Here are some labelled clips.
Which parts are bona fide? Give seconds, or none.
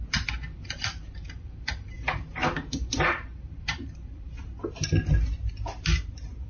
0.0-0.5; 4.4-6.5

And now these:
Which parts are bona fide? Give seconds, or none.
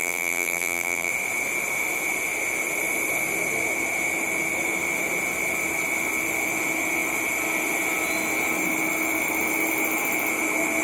1.1-10.8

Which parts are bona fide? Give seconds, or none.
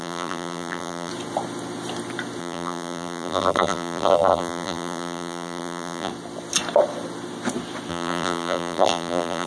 1.1-2.4; 6.1-7.9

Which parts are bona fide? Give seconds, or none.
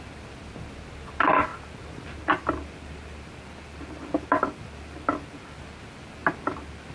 0.0-1.5; 5.6-6.2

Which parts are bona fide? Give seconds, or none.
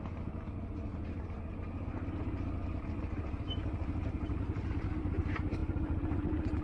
0.0-0.9; 1.5-6.6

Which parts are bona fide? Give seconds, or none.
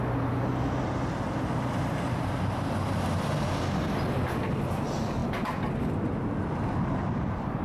0.0-7.6